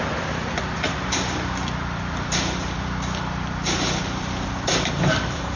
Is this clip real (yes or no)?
no